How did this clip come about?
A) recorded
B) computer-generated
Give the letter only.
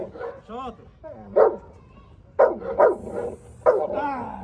A